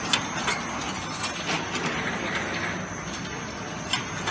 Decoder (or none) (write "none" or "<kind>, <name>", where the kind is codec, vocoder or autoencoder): none